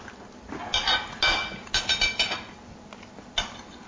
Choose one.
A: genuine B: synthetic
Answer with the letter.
A